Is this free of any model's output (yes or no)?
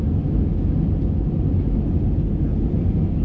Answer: yes